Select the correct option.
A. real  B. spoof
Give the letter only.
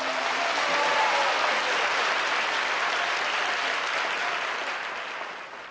A